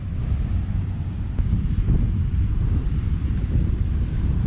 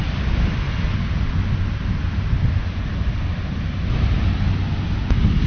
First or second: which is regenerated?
first